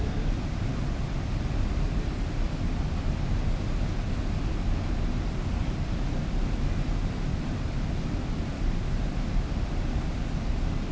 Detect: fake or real real